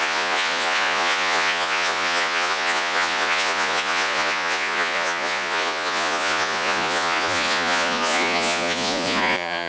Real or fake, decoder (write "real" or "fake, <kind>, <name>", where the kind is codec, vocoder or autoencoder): fake, vocoder, Vocos